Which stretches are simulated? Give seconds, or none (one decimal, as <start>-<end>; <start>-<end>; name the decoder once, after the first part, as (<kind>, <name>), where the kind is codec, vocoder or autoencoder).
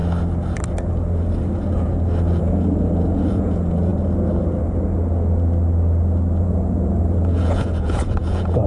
2.4-3.9 (vocoder, Vocos); 6.4-8.7